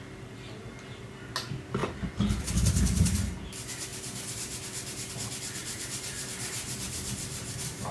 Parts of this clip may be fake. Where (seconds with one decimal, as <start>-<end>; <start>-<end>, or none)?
3.9-5.1; 5.6-7.9